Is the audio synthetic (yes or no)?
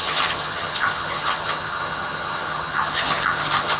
yes